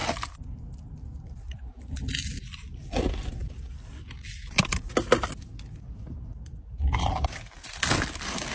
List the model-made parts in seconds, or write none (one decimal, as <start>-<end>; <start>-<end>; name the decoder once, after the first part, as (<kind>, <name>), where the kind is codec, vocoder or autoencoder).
none